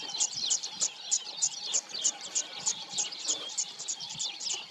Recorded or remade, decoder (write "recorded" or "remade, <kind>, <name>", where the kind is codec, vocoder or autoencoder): recorded